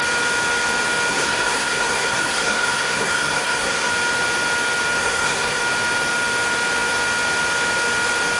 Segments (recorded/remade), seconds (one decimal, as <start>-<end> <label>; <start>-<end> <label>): 0.0-1.1 recorded; 1.1-3.9 remade; 3.9-5.0 recorded; 5.0-5.6 remade; 5.6-8.4 recorded

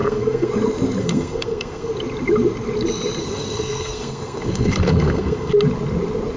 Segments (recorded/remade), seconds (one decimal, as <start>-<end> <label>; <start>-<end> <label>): 0.0-0.5 remade; 0.5-1.0 recorded; 1.0-1.9 remade; 1.9-3.2 recorded; 3.2-5.5 remade; 5.5-6.4 recorded